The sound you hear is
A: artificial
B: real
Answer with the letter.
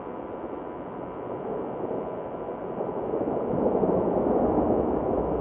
B